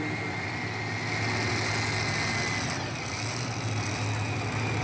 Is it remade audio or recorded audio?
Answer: recorded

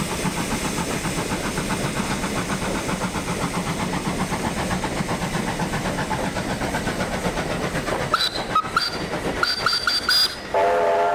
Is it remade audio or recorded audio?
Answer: recorded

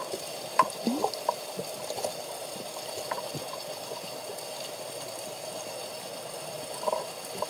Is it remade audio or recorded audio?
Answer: recorded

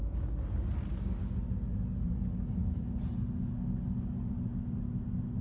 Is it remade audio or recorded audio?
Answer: recorded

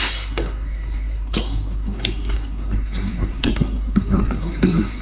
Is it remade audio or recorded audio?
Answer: remade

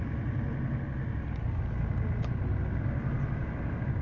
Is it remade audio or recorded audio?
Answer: recorded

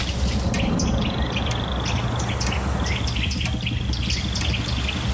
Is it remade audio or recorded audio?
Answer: recorded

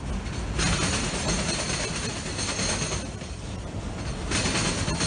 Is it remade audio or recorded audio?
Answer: recorded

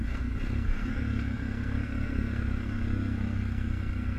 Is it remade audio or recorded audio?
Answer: remade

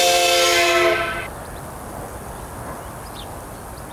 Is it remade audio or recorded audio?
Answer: recorded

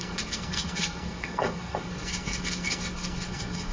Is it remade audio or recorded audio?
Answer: remade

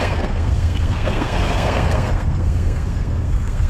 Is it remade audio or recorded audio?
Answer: remade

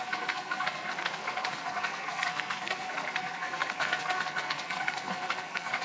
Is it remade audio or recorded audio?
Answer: remade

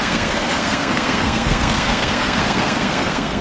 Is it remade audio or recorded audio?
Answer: remade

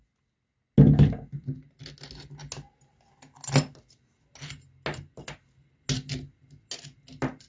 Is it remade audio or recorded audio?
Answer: recorded